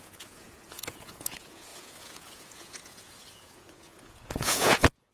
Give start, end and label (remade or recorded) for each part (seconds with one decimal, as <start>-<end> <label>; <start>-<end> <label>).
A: 0.0-5.1 remade